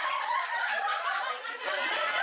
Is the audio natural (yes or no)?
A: no